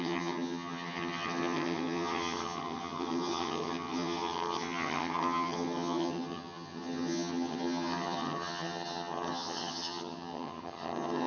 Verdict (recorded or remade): remade